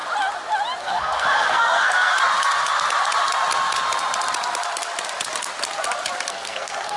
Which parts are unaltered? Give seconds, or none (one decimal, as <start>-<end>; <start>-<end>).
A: 0.0-0.8; 2.1-6.3